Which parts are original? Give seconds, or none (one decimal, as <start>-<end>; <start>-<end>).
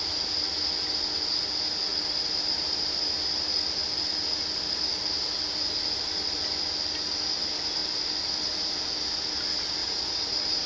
0.0-9.8